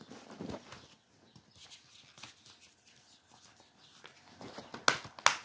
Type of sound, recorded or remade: recorded